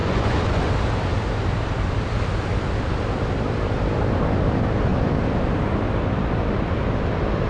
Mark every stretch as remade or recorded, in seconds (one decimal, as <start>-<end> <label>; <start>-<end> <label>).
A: 0.0-0.7 remade; 0.7-7.5 recorded